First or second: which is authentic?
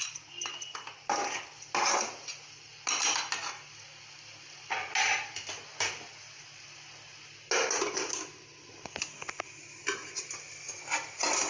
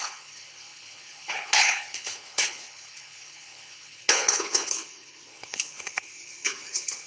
first